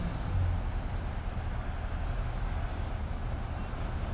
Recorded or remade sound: recorded